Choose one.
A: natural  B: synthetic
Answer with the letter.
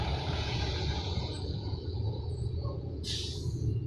B